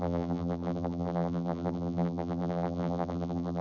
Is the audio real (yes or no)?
no